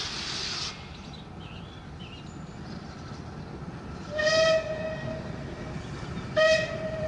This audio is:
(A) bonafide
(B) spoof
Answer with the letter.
A